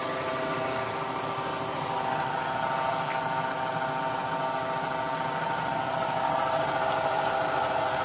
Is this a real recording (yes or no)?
yes